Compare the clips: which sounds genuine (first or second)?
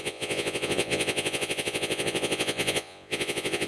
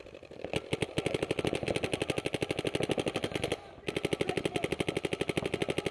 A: second